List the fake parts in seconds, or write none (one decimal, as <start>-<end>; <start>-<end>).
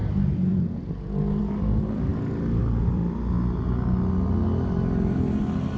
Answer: 0.0-2.1; 2.6-3.0